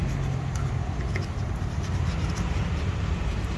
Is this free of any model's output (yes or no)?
yes